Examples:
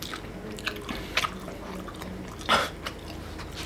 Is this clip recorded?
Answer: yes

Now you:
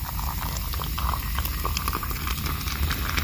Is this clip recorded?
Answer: yes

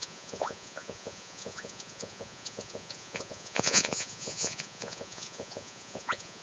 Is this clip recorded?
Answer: no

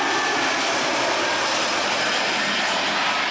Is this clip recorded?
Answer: yes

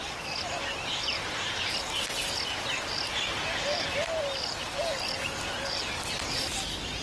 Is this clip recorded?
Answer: yes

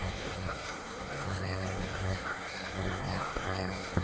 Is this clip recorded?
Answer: no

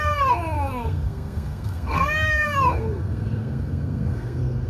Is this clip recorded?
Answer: no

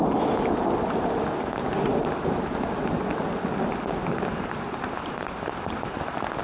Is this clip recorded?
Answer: yes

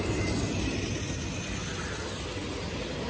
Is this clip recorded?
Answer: yes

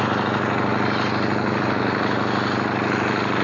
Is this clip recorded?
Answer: yes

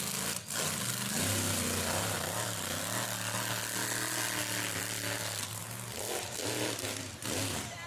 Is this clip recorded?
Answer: yes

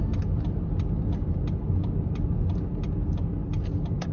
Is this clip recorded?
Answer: yes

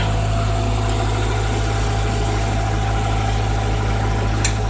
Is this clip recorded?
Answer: yes